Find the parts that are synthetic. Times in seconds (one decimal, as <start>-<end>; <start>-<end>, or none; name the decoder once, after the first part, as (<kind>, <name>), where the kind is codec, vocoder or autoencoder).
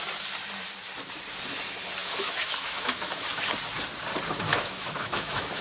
2.0-3.4 (autoencoder, DAC-VAE); 4.5-5.6